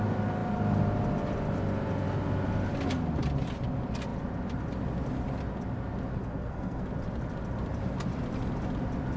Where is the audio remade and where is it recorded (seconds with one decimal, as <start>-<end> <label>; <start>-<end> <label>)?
0.0-6.1 recorded; 6.1-6.9 remade; 6.9-9.2 recorded